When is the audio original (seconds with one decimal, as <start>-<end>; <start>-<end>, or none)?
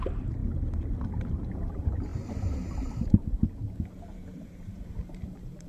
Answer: 0.4-1.1